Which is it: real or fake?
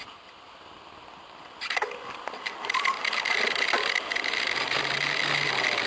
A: real